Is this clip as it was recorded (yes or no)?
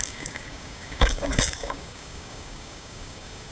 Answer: no